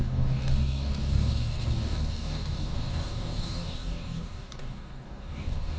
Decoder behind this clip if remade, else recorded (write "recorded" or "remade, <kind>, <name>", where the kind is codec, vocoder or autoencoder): remade, codec, DAC